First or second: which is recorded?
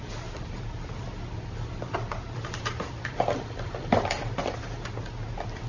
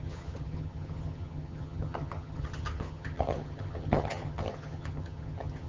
first